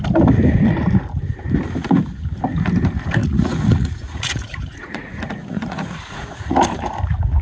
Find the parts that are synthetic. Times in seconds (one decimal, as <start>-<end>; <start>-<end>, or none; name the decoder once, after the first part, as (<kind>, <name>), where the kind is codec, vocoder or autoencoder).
3.2-6.8 (vocoder, Vocos)